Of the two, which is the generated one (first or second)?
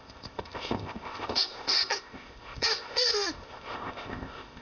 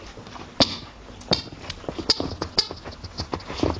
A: first